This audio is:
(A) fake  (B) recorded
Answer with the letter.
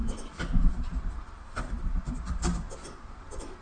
A